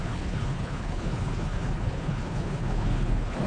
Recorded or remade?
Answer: remade